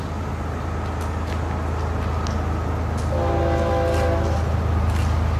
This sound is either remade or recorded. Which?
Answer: recorded